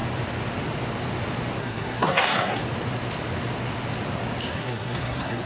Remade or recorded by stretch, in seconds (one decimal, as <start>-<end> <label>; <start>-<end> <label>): 0.0-1.6 recorded; 1.6-2.6 remade; 2.6-4.5 recorded; 4.5-5.5 remade